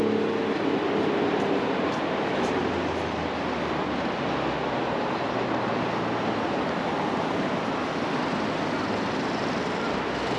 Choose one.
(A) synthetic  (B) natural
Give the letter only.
B